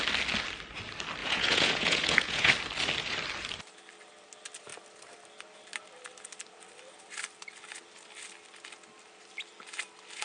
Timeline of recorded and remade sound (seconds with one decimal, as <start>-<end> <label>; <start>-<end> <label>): 0.0-1.2 recorded; 1.2-2.5 remade; 2.5-10.2 recorded

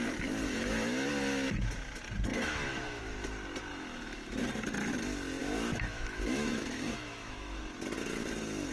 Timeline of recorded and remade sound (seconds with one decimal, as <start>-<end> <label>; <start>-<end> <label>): 0.0-0.4 recorded; 0.4-1.1 remade; 1.1-2.3 recorded; 2.3-3.0 remade; 3.0-3.7 recorded; 3.7-4.4 remade; 4.4-5.4 recorded; 5.4-7.6 remade; 7.6-8.7 recorded

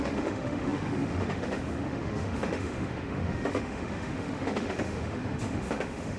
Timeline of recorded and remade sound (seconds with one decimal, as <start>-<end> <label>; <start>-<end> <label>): 0.0-6.2 remade

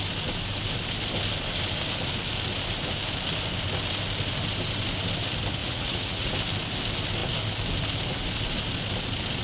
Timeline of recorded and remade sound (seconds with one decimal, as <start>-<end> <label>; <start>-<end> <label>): 0.0-5.6 recorded; 5.6-6.3 remade; 6.3-9.4 recorded

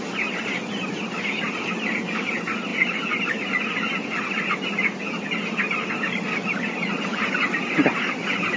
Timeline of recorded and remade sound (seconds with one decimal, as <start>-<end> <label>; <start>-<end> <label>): 0.0-8.6 recorded

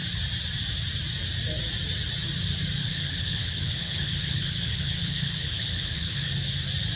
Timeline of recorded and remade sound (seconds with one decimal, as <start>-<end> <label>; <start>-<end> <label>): 0.0-2.8 recorded; 2.8-6.3 remade; 6.3-7.0 recorded

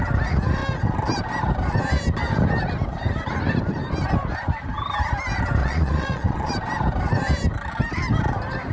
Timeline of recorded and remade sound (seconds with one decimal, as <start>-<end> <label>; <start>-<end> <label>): 0.0-5.6 recorded; 5.6-6.5 remade; 6.5-8.7 recorded

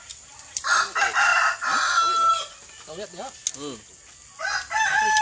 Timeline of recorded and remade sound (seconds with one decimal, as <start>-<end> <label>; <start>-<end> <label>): 0.0-1.3 remade; 1.3-2.3 recorded; 2.3-3.4 remade; 3.4-5.2 recorded